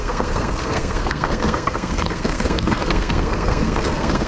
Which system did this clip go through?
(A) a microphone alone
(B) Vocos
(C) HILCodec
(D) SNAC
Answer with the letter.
D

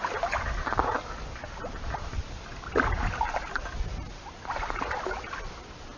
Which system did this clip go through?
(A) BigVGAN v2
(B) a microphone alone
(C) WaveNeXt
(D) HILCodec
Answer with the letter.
B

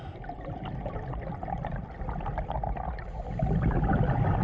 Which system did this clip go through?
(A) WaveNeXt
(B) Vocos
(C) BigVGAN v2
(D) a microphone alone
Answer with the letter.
D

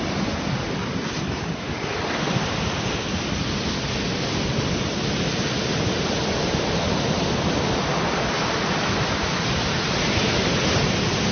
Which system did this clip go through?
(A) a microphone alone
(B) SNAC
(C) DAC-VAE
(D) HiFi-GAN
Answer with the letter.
A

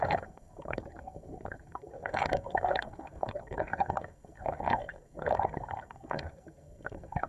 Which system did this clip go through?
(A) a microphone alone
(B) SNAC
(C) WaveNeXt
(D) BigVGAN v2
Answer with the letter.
B